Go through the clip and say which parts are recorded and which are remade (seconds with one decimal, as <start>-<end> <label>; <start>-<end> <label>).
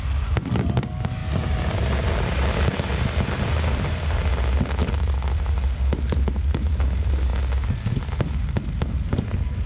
0.0-9.7 recorded